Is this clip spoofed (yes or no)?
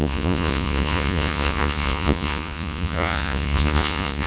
yes